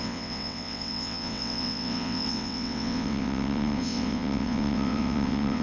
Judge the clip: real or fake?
fake